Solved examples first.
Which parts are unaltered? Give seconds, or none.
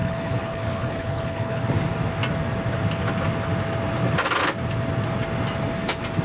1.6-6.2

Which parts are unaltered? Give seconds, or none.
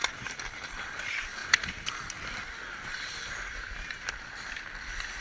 0.0-0.8; 1.4-4.5